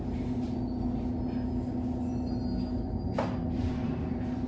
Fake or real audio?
real